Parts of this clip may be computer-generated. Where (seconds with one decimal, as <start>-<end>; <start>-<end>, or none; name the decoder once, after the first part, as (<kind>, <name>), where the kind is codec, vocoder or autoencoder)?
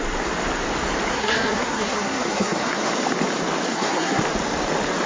1.1-2.9 (codec, SNAC); 3.7-4.2